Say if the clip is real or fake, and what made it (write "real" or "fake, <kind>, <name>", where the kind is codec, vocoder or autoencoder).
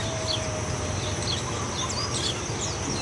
real